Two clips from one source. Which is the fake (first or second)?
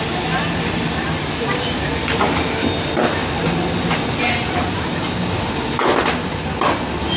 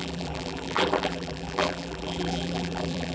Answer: second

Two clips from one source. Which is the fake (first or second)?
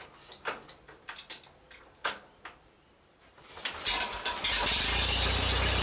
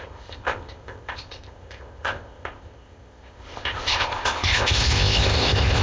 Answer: second